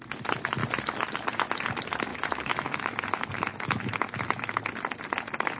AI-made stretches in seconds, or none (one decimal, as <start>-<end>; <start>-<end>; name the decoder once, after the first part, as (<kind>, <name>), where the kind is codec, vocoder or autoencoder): 2.1-4.5 (autoencoder, DAC-VAE)